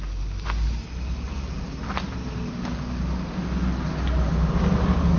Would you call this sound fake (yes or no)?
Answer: no